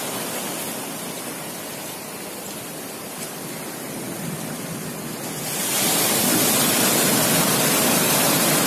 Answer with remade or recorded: recorded